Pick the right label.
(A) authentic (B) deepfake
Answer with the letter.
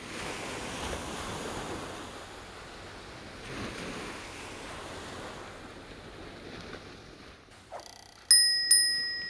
A